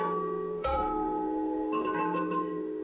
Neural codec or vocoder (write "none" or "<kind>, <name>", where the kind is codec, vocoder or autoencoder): codec, SNAC